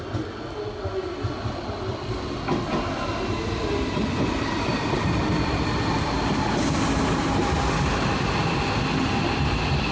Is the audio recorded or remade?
recorded